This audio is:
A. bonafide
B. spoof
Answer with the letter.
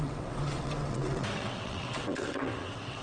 B